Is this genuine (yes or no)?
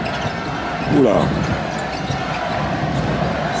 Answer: yes